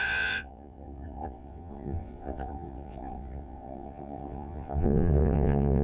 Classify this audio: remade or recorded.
remade